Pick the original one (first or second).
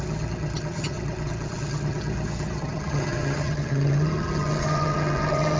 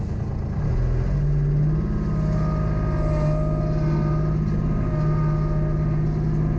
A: second